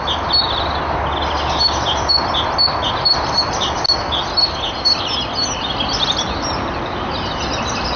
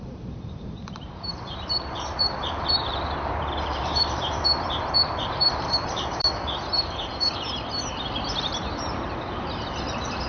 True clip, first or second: first